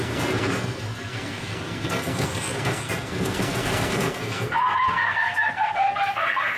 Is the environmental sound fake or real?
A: fake